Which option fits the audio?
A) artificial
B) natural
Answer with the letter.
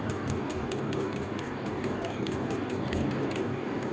A